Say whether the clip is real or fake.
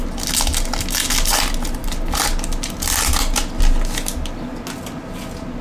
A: real